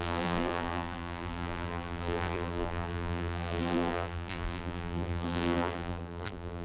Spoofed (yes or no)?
yes